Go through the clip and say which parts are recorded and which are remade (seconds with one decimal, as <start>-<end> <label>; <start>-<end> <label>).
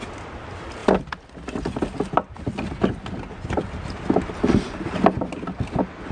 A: 0.0-6.1 recorded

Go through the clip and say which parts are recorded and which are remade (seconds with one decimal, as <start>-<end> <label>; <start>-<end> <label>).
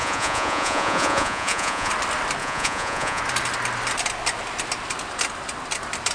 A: 0.0-1.9 remade; 1.9-2.4 recorded; 2.4-3.2 remade; 3.2-6.1 recorded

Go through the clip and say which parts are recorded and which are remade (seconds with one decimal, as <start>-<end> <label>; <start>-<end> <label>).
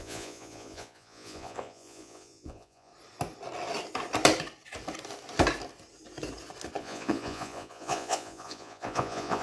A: 0.0-2.9 remade; 2.9-6.8 recorded; 6.8-9.4 remade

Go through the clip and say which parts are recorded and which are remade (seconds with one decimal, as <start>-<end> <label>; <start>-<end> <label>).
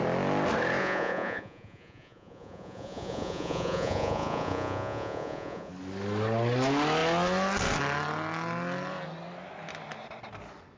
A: 0.0-0.8 recorded; 0.8-5.7 remade; 5.7-10.8 recorded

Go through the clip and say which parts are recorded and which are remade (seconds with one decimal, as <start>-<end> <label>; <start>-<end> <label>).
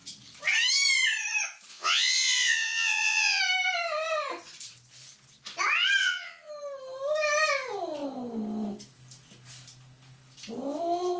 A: 0.0-1.7 recorded; 1.7-3.4 remade; 3.4-6.0 recorded; 6.0-6.5 remade; 6.5-11.2 recorded